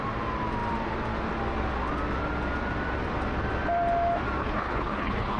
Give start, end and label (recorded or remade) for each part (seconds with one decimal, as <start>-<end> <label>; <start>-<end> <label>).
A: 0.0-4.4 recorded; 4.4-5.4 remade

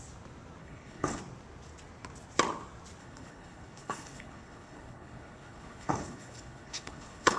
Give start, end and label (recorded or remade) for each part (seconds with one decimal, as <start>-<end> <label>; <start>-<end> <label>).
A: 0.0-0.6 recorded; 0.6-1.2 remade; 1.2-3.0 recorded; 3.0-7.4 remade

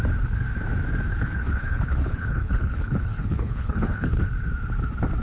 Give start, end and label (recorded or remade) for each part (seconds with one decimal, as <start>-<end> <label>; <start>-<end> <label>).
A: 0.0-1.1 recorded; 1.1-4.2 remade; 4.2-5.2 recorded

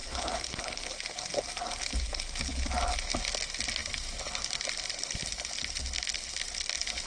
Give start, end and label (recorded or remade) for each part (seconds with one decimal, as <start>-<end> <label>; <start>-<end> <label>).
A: 0.0-0.8 remade; 0.8-7.1 recorded

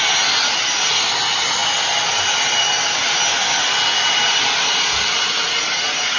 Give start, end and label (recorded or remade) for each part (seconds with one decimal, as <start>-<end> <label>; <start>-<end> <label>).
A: 0.0-6.2 recorded

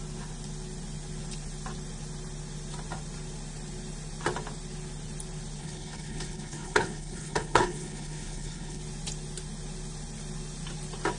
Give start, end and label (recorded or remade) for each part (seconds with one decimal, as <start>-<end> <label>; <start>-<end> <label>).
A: 0.0-5.6 recorded; 5.6-8.8 remade; 8.8-11.2 recorded

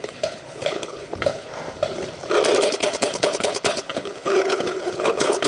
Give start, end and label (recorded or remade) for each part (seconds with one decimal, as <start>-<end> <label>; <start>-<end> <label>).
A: 0.0-1.5 remade; 1.5-2.6 recorded; 2.6-5.5 remade